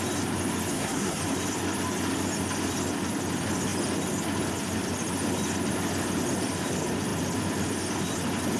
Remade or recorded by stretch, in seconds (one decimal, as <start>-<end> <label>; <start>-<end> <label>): 0.0-0.7 recorded; 0.7-1.2 remade; 1.2-8.6 recorded